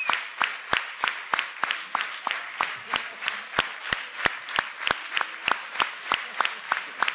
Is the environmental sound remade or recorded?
recorded